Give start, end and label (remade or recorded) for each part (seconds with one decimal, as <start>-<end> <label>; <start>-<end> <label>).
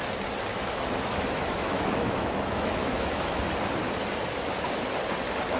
0.0-0.5 recorded; 0.5-3.4 remade; 3.4-5.6 recorded